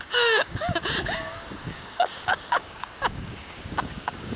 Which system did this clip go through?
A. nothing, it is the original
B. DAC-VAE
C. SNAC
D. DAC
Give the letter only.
D